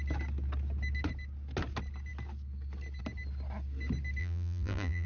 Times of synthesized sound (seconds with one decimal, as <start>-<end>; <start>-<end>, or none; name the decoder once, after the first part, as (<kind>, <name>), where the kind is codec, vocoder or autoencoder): 4.2-5.1 (vocoder, BigVGAN v2)